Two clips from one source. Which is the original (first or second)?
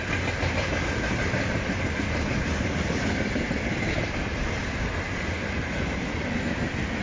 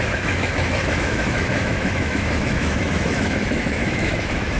first